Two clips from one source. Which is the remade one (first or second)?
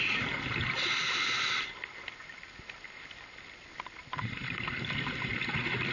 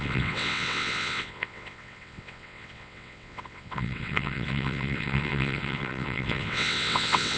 second